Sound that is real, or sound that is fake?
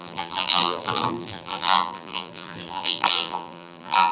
fake